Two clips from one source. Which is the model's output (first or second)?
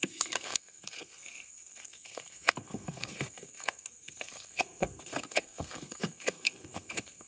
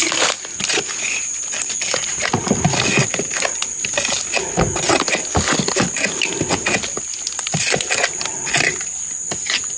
first